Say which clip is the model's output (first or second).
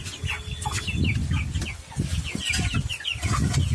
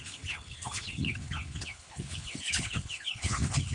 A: second